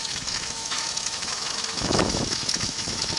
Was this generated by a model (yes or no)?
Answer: yes